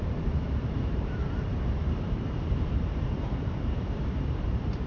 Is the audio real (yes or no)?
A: no